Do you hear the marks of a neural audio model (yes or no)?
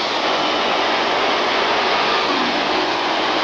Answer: yes